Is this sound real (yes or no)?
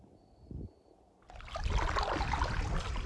yes